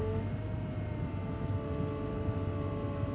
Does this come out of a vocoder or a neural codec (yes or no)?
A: no